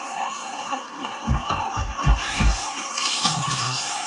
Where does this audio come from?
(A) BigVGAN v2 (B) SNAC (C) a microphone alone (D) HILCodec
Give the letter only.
B